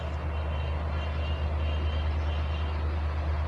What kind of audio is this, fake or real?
real